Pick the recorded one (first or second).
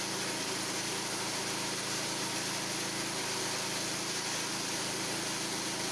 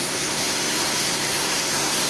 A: first